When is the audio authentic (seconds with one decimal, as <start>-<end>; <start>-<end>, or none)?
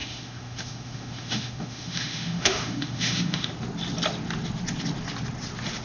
3.5-5.8